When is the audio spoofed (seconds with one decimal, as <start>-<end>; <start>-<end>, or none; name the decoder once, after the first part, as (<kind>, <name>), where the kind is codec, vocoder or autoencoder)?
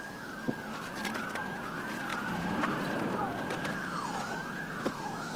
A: 2.1-5.4 (vocoder, BigVGAN v2)